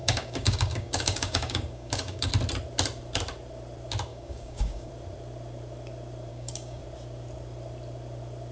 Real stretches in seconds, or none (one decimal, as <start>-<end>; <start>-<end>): 2.3-4.1; 4.9-6.3; 6.8-8.5